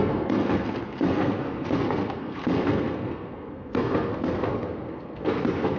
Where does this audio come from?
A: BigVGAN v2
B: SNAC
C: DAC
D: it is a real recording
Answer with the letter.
B